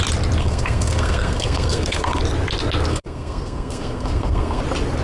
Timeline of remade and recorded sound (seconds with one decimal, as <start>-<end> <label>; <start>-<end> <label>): 0.0-0.4 recorded; 0.4-2.2 remade; 2.2-2.9 recorded; 2.9-4.6 remade; 4.6-5.0 recorded

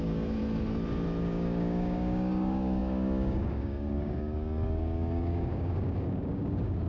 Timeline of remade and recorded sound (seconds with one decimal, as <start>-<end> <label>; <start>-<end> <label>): 0.0-0.4 remade; 0.4-1.2 recorded; 1.2-6.9 remade

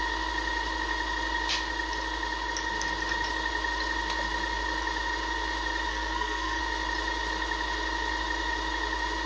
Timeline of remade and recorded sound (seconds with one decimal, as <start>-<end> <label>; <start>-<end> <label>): 0.0-5.9 recorded; 5.9-6.6 remade; 6.6-9.3 recorded

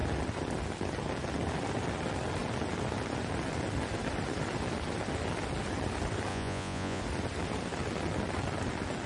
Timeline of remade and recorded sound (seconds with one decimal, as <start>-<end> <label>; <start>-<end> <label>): 0.0-6.3 recorded; 6.3-7.0 remade; 7.0-9.1 recorded

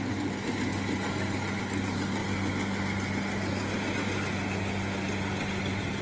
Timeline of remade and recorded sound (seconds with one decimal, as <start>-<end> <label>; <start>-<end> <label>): 0.0-6.0 recorded

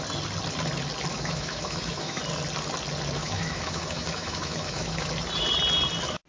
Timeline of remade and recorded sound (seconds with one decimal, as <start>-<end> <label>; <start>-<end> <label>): 0.0-1.1 recorded; 1.1-2.2 remade; 2.2-3.2 recorded; 3.2-5.1 remade; 5.1-6.3 recorded

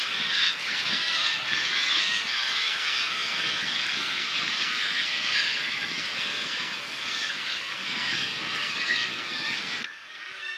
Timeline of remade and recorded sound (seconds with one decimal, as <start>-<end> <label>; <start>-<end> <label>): 0.0-10.6 remade

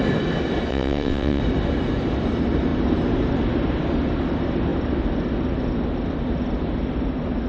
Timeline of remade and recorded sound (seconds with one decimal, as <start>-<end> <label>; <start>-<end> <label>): 0.0-0.7 recorded; 0.7-1.4 remade; 1.4-7.5 recorded